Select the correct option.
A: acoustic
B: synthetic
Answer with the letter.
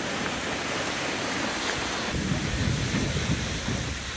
B